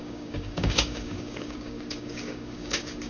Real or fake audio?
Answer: fake